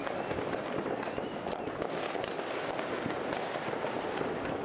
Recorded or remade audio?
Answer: recorded